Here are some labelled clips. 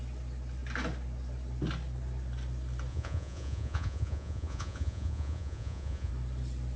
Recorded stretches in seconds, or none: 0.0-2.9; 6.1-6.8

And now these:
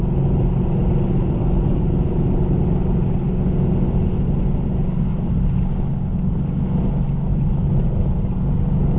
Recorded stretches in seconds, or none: 0.0-9.0

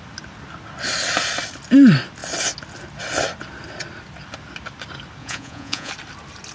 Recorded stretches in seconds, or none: 0.0-5.2; 5.9-6.5

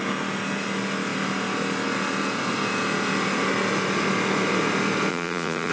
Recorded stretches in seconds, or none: 0.0-5.1

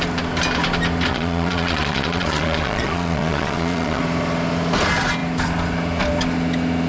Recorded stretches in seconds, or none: 0.0-1.1; 4.0-6.9

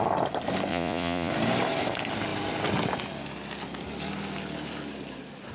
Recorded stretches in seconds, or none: 0.0-0.7; 1.3-5.5

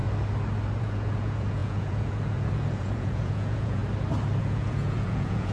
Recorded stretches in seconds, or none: 0.0-0.8; 3.8-4.4

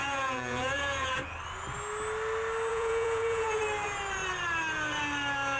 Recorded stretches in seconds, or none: 1.2-2.7; 3.6-5.6